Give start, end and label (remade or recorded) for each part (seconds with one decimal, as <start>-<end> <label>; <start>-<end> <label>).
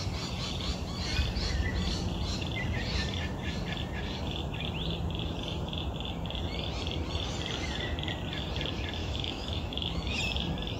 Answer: 0.0-9.0 recorded; 9.0-10.2 remade; 10.2-10.8 recorded